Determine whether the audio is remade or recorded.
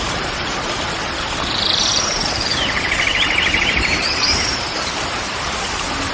remade